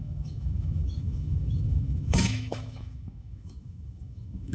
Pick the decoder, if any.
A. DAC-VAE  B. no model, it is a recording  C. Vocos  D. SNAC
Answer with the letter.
A